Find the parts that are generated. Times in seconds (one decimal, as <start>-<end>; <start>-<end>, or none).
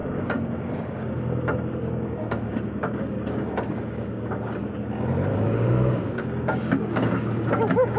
0.0-4.7; 5.3-8.0